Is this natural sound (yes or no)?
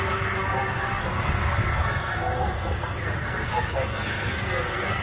no